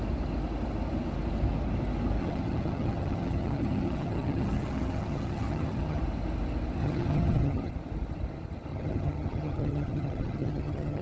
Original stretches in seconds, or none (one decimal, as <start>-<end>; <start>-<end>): 0.0-2.2; 6.0-6.8; 7.7-8.7

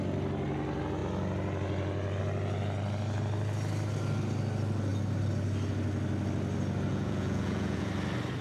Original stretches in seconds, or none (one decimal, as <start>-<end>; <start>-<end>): 0.0-6.9; 7.9-8.4

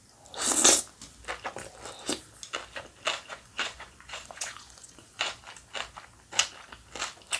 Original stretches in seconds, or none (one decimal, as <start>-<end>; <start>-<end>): 0.0-3.3; 5.4-7.4

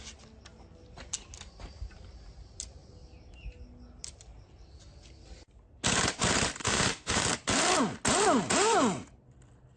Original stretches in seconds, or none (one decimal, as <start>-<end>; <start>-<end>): 0.0-6.6; 7.2-9.8

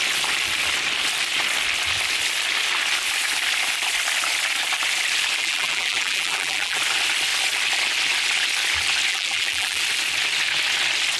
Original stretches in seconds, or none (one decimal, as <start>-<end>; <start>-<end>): 0.0-5.4; 6.8-9.1; 9.8-11.2